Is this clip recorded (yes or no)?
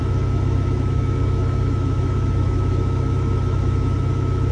no